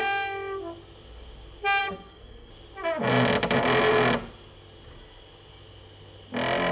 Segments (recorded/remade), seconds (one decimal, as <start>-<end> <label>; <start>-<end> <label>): 0.0-1.8 recorded; 1.8-2.5 remade; 2.5-6.7 recorded